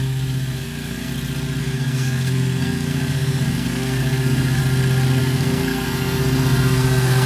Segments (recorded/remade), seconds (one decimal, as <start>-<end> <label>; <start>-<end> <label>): 0.0-1.1 remade; 1.1-1.6 recorded; 1.6-4.6 remade; 4.6-5.2 recorded; 5.2-7.3 remade